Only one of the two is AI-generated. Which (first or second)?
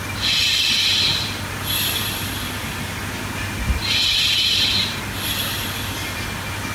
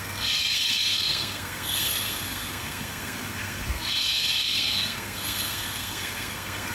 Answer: second